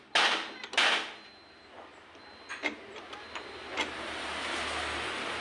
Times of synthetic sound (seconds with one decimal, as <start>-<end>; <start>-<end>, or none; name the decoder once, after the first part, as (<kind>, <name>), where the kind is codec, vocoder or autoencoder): none